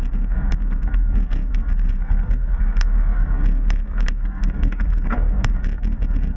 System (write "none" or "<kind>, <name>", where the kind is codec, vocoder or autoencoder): codec, SNAC